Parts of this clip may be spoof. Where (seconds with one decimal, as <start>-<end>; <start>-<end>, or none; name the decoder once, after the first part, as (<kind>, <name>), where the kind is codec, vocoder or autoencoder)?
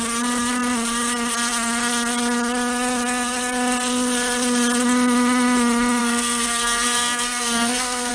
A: 6.0-8.1 (codec, SNAC)